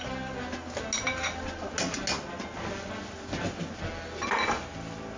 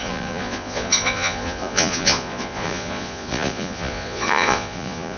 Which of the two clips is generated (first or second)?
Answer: second